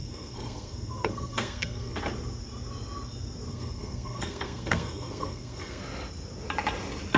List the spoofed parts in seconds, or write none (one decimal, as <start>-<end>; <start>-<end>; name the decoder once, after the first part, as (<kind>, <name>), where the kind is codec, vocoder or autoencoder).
0.0-2.0 (codec, SNAC); 3.5-5.8